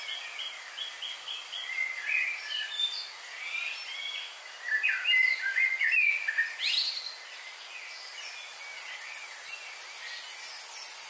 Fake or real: real